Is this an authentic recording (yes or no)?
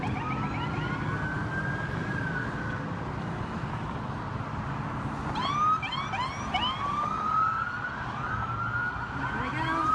yes